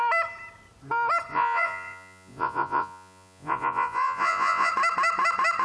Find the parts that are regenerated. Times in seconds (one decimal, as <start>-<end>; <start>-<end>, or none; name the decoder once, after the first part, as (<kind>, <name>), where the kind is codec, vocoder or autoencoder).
1.3-4.7 (vocoder, Vocos)